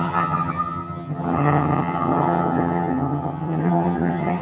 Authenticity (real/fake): fake